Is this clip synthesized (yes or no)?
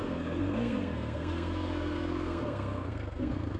yes